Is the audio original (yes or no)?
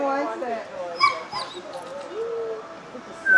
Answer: yes